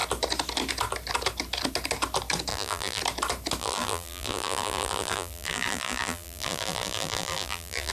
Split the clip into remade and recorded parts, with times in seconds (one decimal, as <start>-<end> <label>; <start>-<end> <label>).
0.0-2.5 recorded; 2.5-3.0 remade; 3.0-3.6 recorded; 3.6-7.9 remade